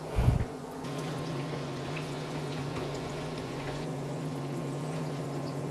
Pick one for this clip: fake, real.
fake